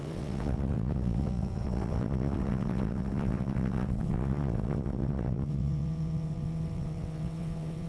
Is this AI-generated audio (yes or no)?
yes